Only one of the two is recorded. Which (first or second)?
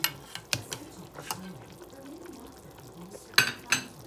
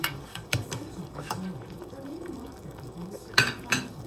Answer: first